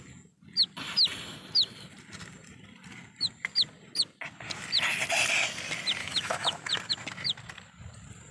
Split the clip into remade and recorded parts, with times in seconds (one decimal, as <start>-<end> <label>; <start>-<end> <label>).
0.0-6.0 recorded; 6.0-6.7 remade; 6.7-8.3 recorded